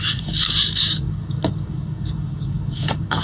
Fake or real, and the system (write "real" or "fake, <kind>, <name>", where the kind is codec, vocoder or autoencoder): fake, codec, DAC